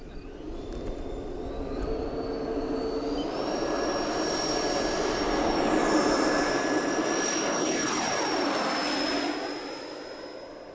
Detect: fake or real real